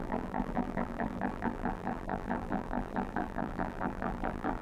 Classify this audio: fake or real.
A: fake